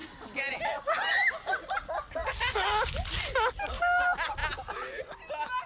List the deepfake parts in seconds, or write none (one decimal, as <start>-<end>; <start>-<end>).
none